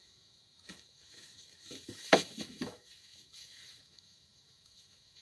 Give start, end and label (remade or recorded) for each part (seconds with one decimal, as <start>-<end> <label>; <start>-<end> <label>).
0.0-5.2 remade